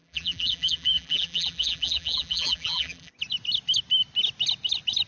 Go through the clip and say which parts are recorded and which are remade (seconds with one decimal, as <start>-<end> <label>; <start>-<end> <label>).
0.0-3.1 remade; 3.1-5.1 recorded